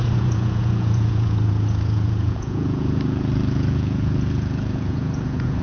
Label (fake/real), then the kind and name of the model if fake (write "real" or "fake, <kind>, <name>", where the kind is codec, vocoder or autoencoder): fake, vocoder, Vocos